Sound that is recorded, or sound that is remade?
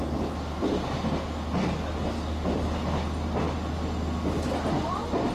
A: recorded